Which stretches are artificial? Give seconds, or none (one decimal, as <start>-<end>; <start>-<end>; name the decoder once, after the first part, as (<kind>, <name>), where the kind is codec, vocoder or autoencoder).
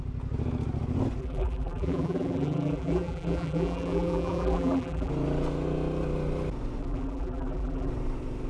1.2-5.1 (vocoder, BigVGAN v2); 6.8-7.9